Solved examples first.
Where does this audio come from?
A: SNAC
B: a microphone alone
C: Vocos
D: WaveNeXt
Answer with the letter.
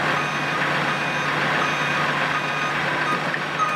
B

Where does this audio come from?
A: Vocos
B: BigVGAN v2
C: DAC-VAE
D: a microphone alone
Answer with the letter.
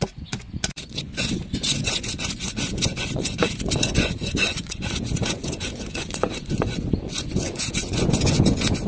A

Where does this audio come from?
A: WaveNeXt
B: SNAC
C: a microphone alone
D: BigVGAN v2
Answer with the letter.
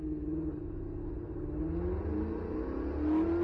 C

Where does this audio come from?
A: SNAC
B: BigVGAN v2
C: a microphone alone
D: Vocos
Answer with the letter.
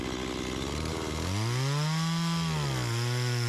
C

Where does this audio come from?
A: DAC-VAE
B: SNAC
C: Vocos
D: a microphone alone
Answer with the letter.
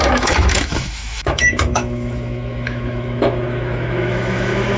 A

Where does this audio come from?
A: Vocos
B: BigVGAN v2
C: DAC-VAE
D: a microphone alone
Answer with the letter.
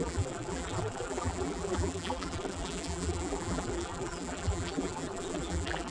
B